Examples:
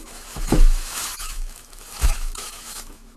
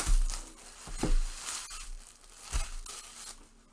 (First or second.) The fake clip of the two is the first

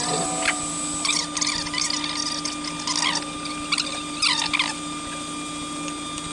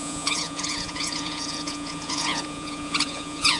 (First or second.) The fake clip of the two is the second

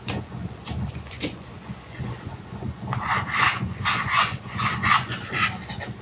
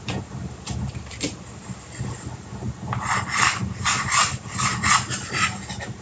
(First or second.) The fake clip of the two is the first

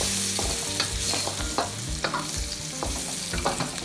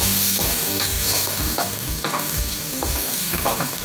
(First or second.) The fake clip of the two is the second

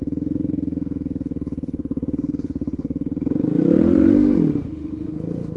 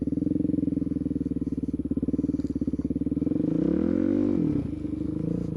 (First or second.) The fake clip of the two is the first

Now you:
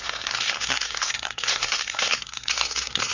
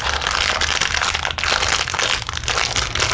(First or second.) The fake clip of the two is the first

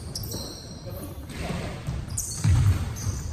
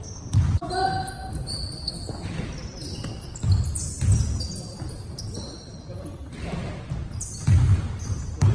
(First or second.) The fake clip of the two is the first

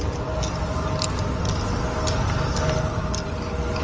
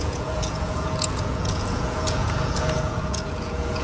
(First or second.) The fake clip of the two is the second